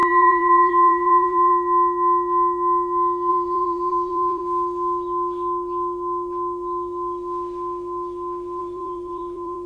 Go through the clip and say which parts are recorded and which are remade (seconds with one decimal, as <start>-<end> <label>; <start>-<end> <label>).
0.0-1.5 remade; 1.5-3.3 recorded; 3.3-4.4 remade; 4.4-8.6 recorded; 8.6-9.7 remade